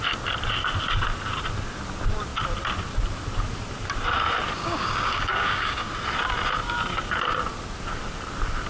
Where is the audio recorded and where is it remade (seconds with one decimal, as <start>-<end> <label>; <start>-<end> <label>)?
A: 0.0-4.6 recorded; 4.6-5.9 remade; 5.9-8.7 recorded